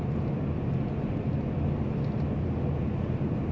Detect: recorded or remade recorded